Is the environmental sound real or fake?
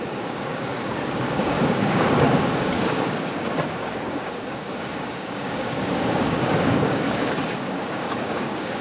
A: fake